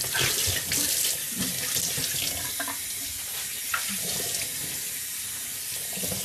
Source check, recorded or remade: recorded